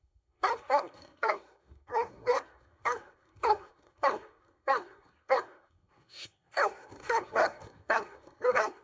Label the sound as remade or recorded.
remade